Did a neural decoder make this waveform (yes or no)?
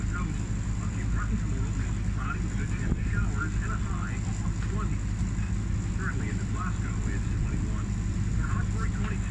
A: no